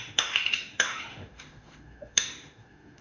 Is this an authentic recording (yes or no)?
no